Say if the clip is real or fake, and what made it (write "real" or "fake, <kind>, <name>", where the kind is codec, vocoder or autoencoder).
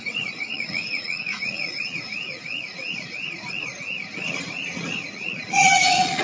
fake, vocoder, Vocos